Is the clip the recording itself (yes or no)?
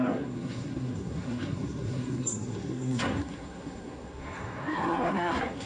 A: no